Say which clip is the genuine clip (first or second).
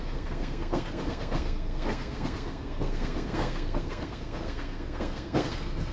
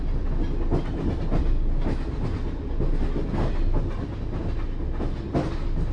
second